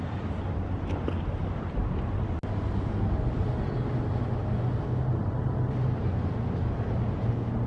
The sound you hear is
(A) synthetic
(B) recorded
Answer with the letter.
B